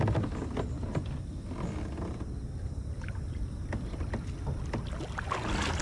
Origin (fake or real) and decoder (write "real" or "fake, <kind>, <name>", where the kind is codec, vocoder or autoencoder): real